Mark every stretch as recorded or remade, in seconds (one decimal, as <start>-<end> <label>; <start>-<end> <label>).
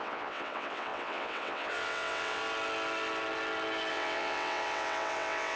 0.0-2.4 remade; 2.4-3.9 recorded; 3.9-5.6 remade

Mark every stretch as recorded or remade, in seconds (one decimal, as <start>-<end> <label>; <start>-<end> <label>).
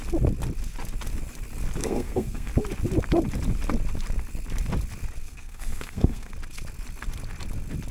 0.0-1.8 recorded; 1.8-2.5 remade; 2.5-5.2 recorded; 5.2-6.3 remade; 6.3-7.9 recorded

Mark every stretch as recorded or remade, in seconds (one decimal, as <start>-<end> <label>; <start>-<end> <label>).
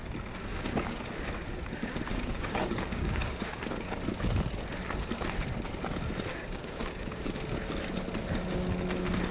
0.0-0.5 recorded; 0.5-1.0 remade; 1.0-2.1 recorded; 2.1-3.9 remade; 3.9-6.3 recorded; 6.3-7.4 remade; 7.4-9.3 recorded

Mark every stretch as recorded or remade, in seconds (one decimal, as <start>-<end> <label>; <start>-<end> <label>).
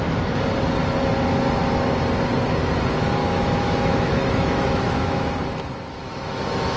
0.0-3.2 recorded; 3.2-5.3 remade; 5.3-6.0 recorded; 6.0-6.8 remade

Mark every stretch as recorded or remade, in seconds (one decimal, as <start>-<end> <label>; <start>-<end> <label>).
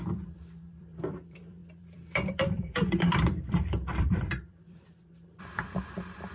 0.0-6.3 remade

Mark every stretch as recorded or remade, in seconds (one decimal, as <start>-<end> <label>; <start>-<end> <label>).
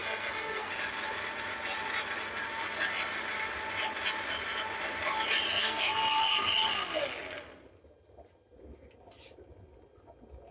0.0-0.7 remade; 0.7-5.6 recorded; 5.6-6.2 remade; 6.2-10.5 recorded